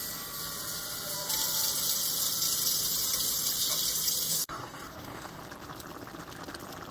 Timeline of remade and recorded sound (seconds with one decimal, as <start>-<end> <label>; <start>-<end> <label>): 0.0-4.3 recorded; 4.3-5.4 remade; 5.4-6.9 recorded